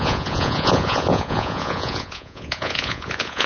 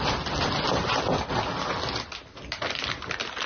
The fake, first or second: first